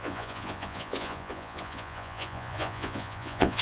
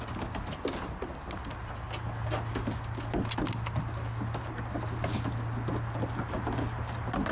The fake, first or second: first